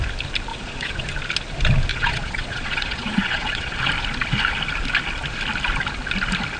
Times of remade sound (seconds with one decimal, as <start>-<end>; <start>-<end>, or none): 0.5-1.1; 1.9-3.8